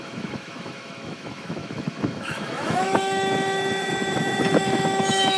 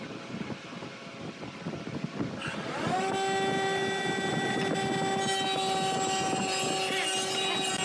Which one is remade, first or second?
first